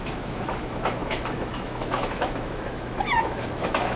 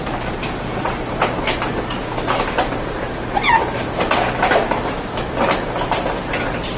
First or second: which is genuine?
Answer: second